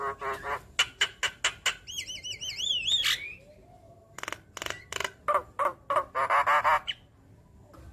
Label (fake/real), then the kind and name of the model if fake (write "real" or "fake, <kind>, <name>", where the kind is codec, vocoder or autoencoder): real